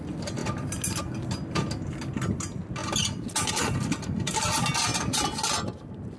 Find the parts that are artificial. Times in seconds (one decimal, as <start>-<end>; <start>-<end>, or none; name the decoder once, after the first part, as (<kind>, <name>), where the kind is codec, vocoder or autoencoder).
none